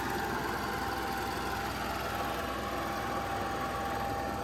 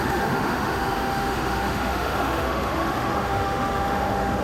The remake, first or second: second